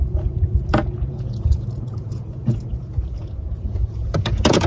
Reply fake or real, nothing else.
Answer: fake